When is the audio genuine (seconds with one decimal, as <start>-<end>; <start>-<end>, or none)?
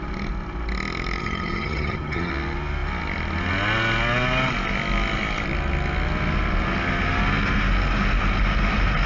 0.0-1.2; 2.3-9.1